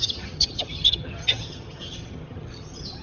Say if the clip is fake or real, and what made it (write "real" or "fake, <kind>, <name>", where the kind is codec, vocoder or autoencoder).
fake, vocoder, HiFi-GAN